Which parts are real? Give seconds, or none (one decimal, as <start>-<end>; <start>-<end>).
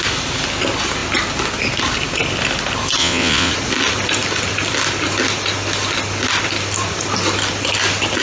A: 0.0-3.0; 3.5-8.2